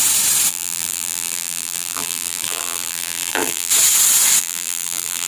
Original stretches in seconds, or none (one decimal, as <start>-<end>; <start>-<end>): 0.0-0.5; 3.7-4.4